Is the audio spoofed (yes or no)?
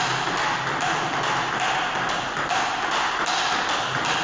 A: no